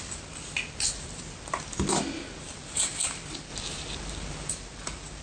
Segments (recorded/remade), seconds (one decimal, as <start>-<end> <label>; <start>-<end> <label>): 0.0-5.2 recorded